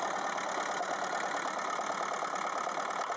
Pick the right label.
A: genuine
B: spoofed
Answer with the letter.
A